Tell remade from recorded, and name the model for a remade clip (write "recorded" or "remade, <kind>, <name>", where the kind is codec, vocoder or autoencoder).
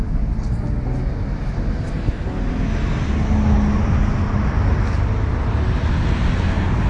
recorded